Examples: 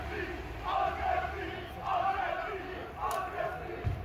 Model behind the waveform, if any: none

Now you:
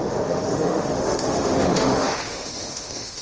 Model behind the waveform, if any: autoencoder, DAC-VAE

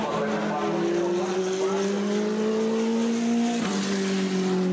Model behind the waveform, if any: none